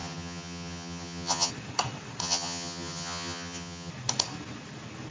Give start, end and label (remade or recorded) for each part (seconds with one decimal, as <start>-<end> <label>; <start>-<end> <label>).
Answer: 0.0-1.5 remade; 1.5-2.2 recorded; 2.2-3.9 remade; 3.9-5.1 recorded